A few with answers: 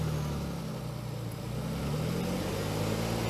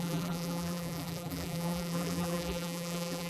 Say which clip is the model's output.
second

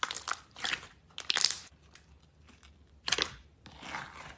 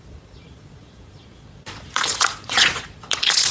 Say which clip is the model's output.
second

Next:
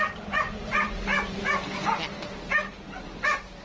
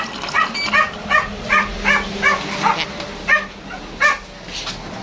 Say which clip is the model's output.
first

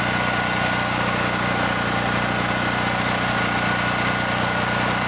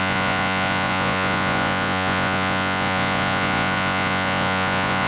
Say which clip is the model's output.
second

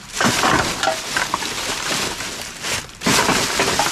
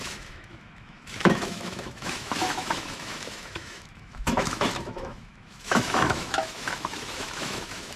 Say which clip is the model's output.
second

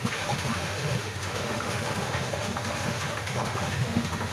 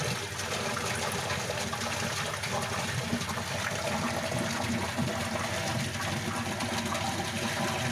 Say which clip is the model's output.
first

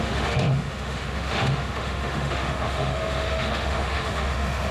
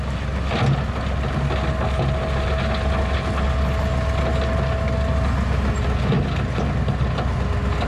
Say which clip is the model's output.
first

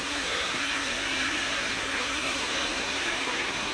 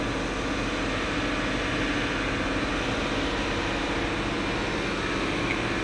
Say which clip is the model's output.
first